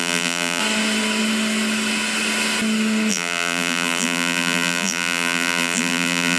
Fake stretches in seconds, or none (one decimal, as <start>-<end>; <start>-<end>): 0.0-0.6; 3.1-6.4